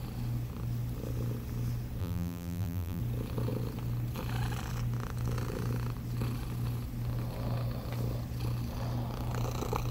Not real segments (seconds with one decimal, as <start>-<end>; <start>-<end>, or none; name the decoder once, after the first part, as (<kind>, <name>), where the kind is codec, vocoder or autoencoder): 2.0-3.0 (vocoder, BigVGAN v2)